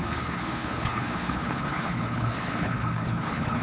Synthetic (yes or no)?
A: yes